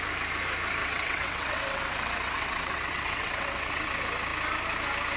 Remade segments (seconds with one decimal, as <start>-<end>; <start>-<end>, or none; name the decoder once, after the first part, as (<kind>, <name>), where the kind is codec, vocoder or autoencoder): 0.8-3.9 (vocoder, WaveNeXt)